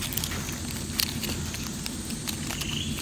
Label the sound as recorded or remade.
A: recorded